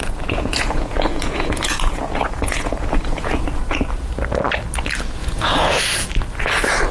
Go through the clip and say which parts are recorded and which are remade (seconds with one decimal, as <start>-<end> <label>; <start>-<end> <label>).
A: 0.0-4.1 remade; 4.1-5.2 recorded; 5.2-5.8 remade; 5.8-6.9 recorded